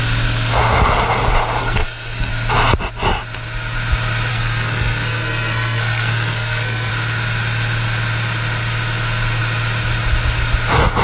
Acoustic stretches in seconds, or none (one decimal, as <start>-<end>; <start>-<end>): 0.0-1.6; 2.3-4.3; 6.9-11.0